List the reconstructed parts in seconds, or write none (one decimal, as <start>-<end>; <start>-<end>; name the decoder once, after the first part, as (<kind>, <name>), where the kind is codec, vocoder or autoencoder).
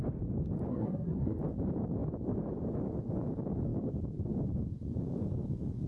0.7-1.4 (codec, SNAC)